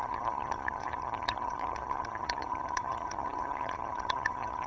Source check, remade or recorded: remade